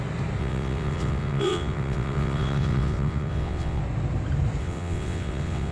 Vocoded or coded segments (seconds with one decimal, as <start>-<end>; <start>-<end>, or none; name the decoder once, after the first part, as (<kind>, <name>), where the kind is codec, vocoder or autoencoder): 0.4-3.8 (vocoder, WaveNeXt); 4.6-5.7